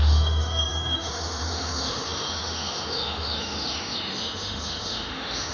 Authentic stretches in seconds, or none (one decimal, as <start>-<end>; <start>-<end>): none

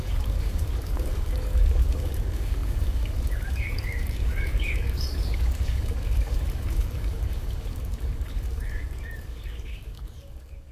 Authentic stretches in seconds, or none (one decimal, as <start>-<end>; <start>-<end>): none

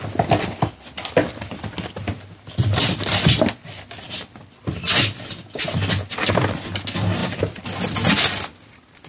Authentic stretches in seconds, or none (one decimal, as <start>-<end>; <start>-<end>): 0.0-9.1

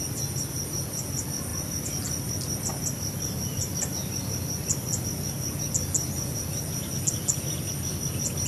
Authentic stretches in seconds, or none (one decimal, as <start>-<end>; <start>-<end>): 0.0-8.5

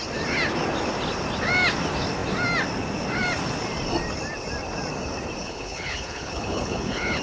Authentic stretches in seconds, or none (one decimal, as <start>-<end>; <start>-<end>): 0.0-5.4